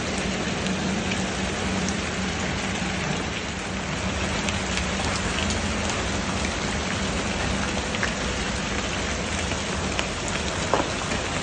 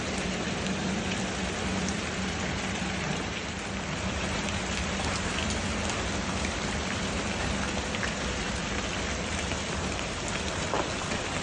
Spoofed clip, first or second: second